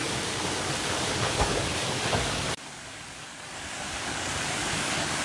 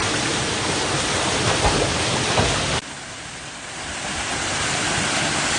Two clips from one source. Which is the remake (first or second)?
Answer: first